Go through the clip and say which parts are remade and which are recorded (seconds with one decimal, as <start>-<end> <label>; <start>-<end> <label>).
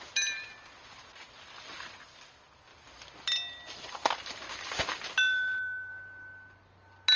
0.0-7.2 recorded